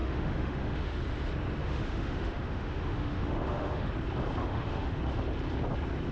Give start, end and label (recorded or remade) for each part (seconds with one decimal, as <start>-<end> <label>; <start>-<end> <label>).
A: 0.0-1.0 remade; 1.0-1.6 recorded; 1.6-3.9 remade; 3.9-4.4 recorded; 4.4-5.0 remade; 5.0-6.1 recorded